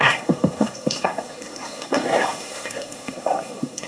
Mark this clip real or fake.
fake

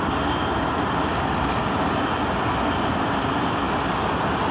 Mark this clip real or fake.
real